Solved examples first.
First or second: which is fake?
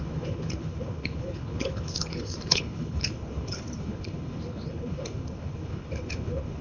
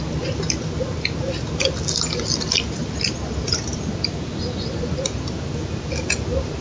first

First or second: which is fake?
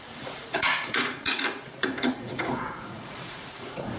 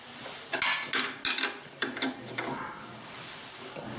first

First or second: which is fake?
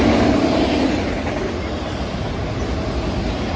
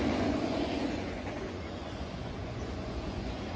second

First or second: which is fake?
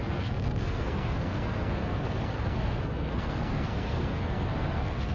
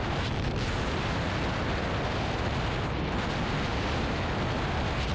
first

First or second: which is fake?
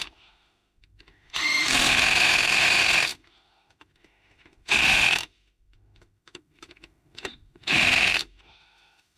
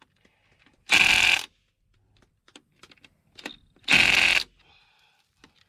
first